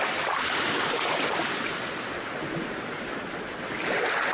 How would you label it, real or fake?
real